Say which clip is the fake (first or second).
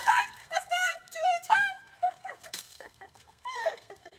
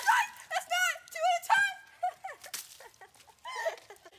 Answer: first